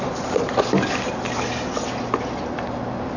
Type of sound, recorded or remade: recorded